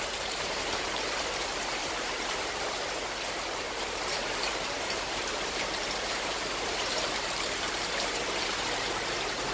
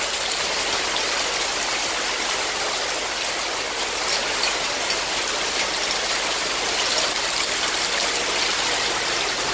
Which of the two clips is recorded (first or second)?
second